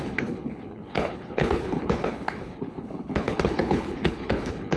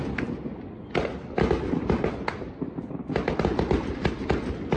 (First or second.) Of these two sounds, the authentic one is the second